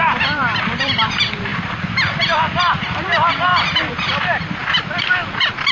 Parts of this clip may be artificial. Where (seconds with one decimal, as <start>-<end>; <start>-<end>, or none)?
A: 0.0-5.7

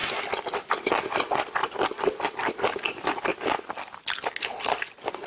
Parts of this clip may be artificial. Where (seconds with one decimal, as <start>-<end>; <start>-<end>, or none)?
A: 0.0-0.7

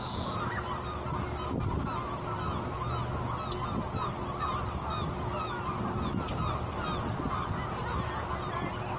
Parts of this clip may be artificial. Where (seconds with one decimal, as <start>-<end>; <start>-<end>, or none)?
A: none

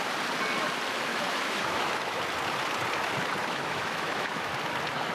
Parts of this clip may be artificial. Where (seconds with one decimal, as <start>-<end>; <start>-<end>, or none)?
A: 1.1-2.2; 3.4-4.5

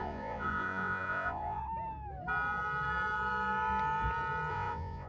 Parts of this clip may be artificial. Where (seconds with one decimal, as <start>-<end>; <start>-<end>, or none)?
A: 0.0-1.6; 4.5-5.1

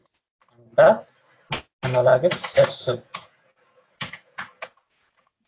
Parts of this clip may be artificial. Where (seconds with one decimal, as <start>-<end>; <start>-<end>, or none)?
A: 2.1-5.5

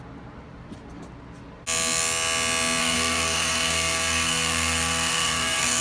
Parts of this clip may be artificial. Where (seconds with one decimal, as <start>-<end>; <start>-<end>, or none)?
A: 2.8-5.8